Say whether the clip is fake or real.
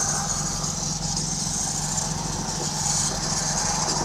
real